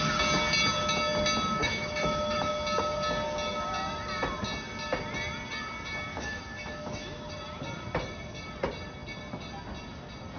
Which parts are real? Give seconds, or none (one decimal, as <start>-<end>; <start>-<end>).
0.0-1.6; 2.5-6.1; 7.3-10.4